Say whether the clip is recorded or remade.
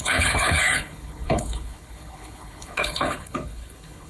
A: remade